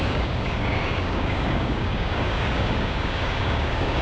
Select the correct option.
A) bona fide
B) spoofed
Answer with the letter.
B